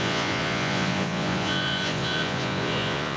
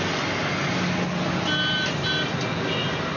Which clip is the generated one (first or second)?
first